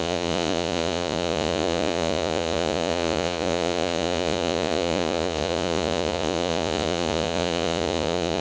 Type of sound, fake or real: fake